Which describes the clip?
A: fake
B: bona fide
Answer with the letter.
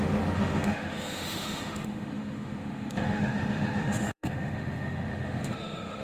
A